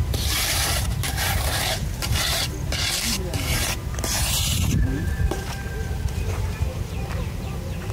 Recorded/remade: remade